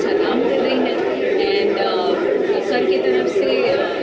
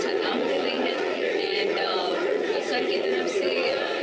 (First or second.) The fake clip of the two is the second